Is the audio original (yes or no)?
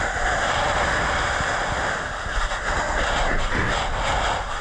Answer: yes